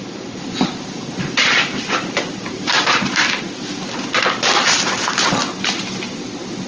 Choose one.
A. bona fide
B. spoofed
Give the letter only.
A